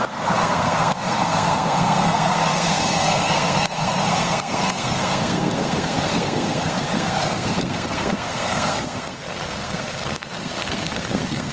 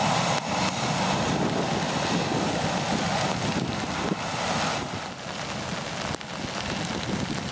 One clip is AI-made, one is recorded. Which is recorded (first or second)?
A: second